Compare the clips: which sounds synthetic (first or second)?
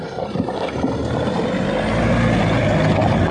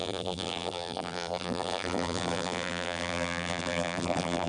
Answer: second